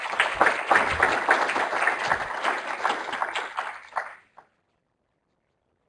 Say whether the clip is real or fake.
fake